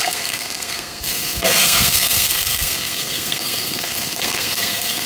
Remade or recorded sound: remade